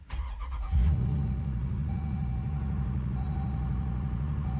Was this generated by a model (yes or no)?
yes